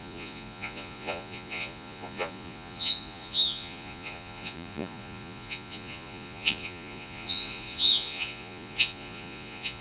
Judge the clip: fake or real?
fake